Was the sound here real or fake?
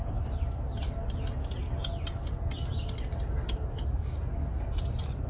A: real